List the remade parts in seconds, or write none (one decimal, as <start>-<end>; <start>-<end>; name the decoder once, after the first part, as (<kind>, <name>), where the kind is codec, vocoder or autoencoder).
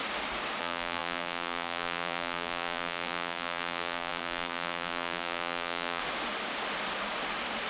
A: 0.6-6.0 (vocoder, BigVGAN v2)